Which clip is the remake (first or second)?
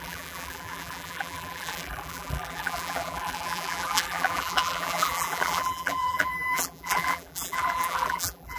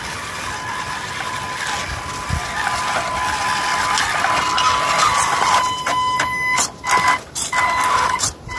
first